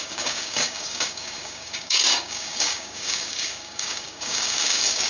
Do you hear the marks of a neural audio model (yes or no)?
yes